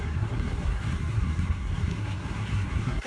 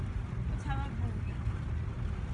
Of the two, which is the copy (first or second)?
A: first